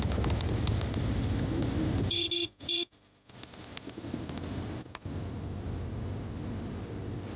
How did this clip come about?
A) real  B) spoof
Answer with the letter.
A